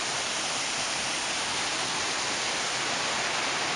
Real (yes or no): yes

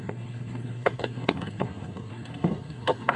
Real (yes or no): no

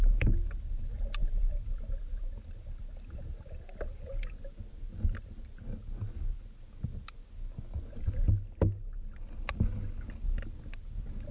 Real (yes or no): yes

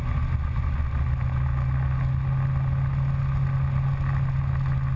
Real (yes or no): yes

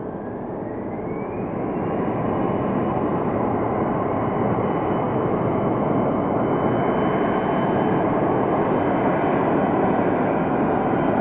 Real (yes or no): yes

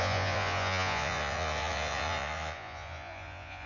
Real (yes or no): no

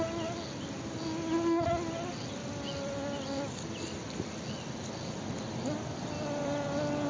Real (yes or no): yes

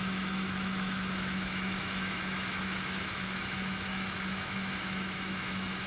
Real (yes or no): no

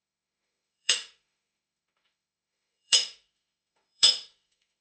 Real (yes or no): no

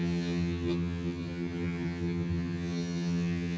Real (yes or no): no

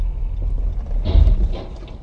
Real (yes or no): yes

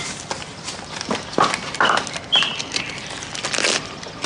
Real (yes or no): yes